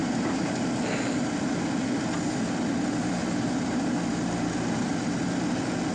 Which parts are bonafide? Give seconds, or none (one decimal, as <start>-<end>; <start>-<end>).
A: 0.0-5.9